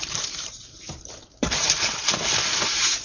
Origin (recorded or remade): remade